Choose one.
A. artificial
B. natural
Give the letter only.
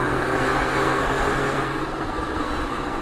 A